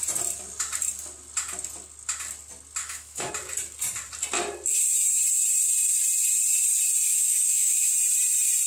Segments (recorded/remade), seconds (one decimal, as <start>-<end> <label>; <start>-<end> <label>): 0.0-2.8 recorded; 2.8-3.3 remade; 3.3-7.1 recorded; 7.1-7.9 remade; 7.9-8.7 recorded